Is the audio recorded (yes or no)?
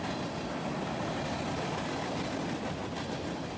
yes